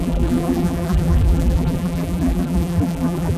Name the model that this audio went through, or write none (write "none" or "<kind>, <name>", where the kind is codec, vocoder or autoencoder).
vocoder, BigVGAN v2